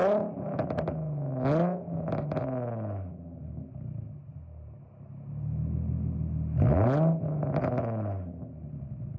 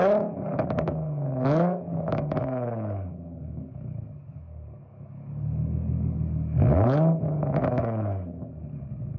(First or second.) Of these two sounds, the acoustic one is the first